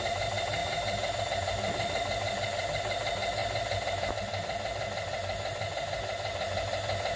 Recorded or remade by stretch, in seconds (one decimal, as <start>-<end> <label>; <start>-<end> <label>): 0.0-7.2 recorded

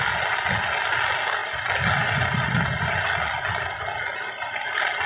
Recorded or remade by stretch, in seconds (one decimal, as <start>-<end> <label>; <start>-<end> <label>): 0.0-5.1 recorded

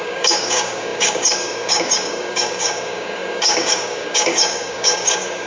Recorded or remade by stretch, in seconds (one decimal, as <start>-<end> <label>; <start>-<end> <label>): 0.0-5.5 remade

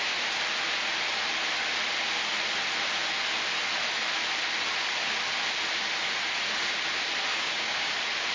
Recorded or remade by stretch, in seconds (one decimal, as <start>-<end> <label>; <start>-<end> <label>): 0.0-7.3 recorded; 7.3-7.9 remade; 7.9-8.3 recorded

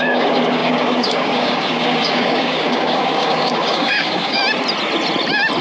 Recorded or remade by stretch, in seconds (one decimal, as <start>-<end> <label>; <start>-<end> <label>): 0.0-4.4 remade; 4.4-5.6 recorded

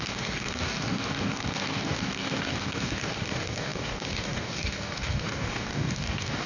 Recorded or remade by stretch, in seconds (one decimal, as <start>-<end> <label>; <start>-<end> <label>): 0.0-6.5 remade